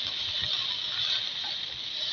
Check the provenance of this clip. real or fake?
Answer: real